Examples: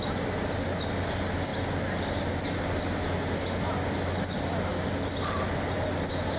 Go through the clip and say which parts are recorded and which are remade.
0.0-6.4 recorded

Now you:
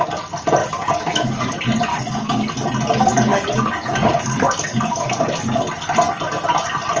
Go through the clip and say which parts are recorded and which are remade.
0.0-0.6 recorded; 0.6-1.5 remade; 1.5-1.9 recorded; 1.9-2.5 remade; 2.5-3.3 recorded; 3.3-5.6 remade; 5.6-7.0 recorded

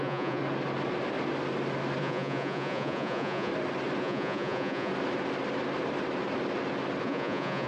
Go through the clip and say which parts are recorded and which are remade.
0.0-0.4 remade; 0.4-2.0 recorded; 2.0-3.5 remade; 3.5-4.0 recorded; 4.0-4.9 remade; 4.9-7.0 recorded; 7.0-7.7 remade

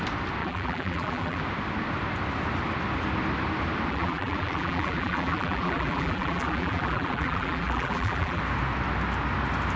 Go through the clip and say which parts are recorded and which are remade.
0.0-0.4 recorded; 0.4-1.4 remade; 1.4-3.9 recorded; 3.9-8.4 remade; 8.4-9.8 recorded